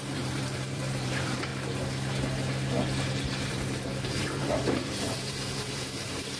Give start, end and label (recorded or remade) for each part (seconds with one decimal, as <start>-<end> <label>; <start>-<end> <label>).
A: 0.0-1.5 remade; 1.5-3.3 recorded; 3.3-6.4 remade